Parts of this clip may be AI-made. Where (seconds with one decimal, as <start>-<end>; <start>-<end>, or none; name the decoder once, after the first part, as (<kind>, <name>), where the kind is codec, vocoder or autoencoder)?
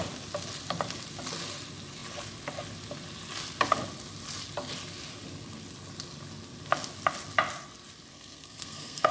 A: 8.1-9.1 (codec, SNAC)